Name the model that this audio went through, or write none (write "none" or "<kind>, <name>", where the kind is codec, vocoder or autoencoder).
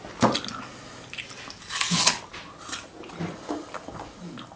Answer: none